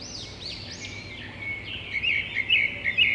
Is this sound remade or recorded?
recorded